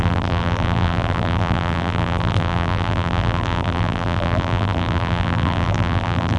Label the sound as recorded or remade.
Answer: remade